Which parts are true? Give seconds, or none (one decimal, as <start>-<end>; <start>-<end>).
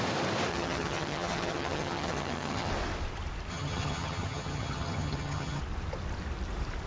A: 0.0-0.5; 2.7-3.5; 5.6-6.9